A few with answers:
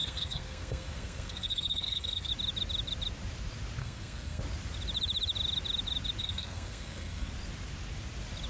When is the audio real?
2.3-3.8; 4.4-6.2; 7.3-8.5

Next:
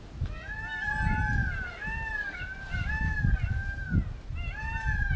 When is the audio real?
0.0-5.2

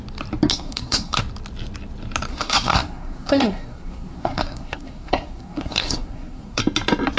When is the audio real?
0.0-0.5; 1.2-2.3; 6.6-7.2